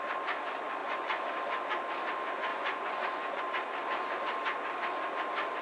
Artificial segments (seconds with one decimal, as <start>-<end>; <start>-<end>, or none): 0.8-1.3; 2.5-3.4